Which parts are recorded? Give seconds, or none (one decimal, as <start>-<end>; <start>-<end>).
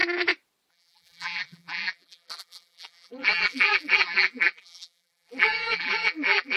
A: 0.0-0.7